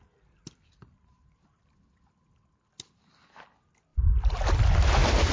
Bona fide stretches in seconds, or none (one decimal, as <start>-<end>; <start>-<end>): 0.0-5.3